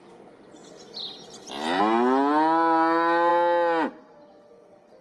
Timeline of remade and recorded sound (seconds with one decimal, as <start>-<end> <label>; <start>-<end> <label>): 0.0-5.0 recorded